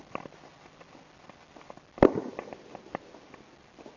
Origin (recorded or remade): recorded